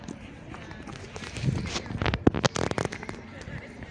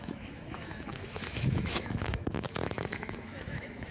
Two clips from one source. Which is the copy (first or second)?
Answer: second